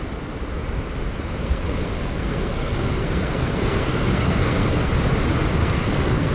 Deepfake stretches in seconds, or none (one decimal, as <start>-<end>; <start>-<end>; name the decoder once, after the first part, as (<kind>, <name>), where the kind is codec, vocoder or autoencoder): 1.4-4.9 (codec, SNAC); 5.6-6.3